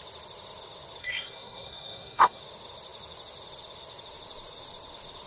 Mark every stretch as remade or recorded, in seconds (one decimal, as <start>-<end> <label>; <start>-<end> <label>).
0.0-1.0 recorded; 1.0-2.4 remade; 2.4-5.3 recorded